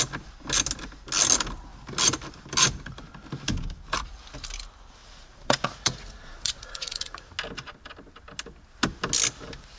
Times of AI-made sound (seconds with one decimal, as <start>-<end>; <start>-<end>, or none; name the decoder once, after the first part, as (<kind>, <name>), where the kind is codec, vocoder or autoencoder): 5.0-7.3 (vocoder, Vocos)